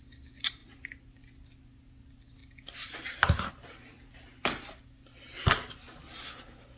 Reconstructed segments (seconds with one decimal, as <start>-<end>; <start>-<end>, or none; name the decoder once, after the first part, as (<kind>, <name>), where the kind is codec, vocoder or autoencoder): none